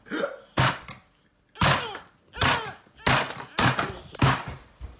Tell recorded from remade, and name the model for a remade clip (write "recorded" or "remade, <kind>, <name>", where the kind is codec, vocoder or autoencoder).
recorded